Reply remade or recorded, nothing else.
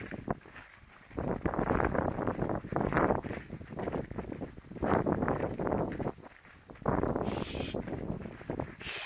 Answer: recorded